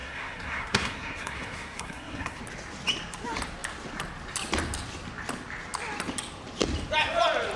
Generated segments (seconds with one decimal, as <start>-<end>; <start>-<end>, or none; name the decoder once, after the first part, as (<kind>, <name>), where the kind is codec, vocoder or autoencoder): 0.0-2.4 (codec, SNAC)